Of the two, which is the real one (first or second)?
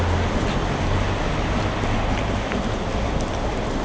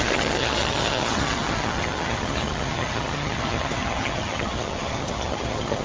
first